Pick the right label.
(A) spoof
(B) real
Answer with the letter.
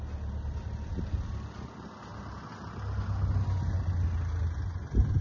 B